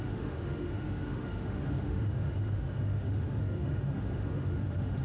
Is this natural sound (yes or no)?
no